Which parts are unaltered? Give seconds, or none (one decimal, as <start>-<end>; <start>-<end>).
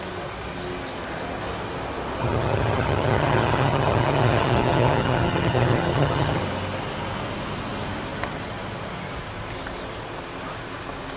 0.0-2.2; 6.4-11.2